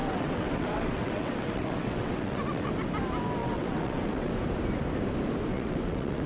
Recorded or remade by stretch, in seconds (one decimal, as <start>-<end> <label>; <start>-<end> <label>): 0.0-2.7 remade; 2.7-3.4 recorded; 3.4-4.3 remade; 4.3-5.5 recorded; 5.5-6.3 remade